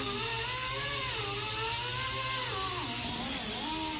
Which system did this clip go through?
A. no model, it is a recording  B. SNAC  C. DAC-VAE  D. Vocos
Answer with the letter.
A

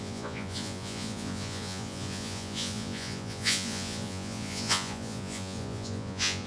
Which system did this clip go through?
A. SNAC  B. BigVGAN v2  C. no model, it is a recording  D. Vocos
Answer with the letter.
D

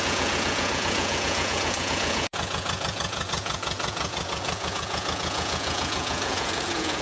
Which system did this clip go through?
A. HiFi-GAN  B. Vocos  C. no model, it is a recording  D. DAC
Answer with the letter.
B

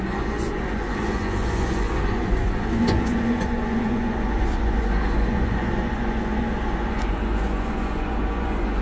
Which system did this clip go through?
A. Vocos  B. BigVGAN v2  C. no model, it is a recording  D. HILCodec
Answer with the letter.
A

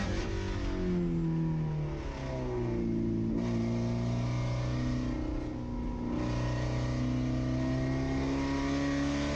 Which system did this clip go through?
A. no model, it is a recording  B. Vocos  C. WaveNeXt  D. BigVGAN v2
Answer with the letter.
A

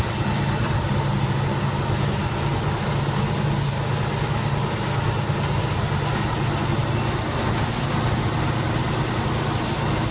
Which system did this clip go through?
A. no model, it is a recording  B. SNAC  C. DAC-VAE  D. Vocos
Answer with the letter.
A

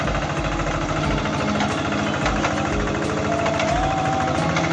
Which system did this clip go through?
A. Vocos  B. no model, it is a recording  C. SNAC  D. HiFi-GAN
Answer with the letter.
B